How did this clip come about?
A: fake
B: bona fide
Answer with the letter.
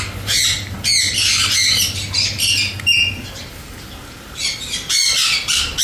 B